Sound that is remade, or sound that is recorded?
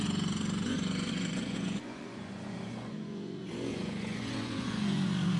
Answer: remade